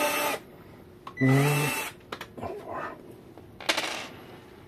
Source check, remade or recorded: recorded